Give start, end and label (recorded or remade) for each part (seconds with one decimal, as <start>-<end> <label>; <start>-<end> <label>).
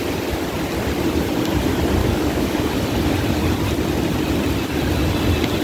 0.0-2.0 recorded; 2.0-2.6 remade; 2.6-5.6 recorded